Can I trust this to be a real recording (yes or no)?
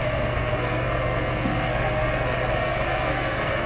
no